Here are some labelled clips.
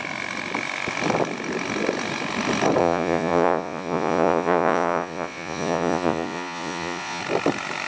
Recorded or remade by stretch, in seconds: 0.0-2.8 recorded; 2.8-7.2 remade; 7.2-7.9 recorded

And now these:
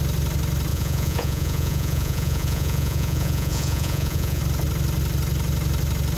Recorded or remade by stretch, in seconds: 0.0-0.7 recorded; 0.7-4.4 remade; 4.4-6.2 recorded

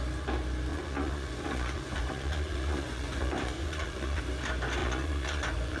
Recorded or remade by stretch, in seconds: 0.0-0.7 recorded; 0.7-4.2 remade; 4.2-4.8 recorded; 4.8-5.8 remade

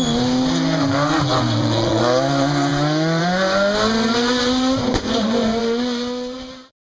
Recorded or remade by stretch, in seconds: 0.0-1.3 recorded; 1.3-2.0 remade; 2.0-4.9 recorded; 4.9-5.6 remade; 5.6-6.9 recorded

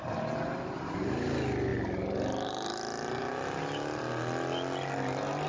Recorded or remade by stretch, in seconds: 0.0-5.5 recorded